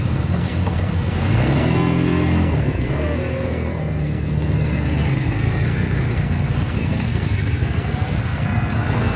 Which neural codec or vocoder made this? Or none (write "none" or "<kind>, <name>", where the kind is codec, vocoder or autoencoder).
codec, SNAC